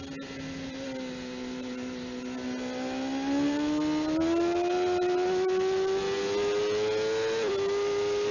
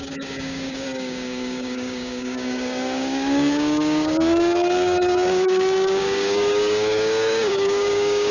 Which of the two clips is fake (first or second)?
second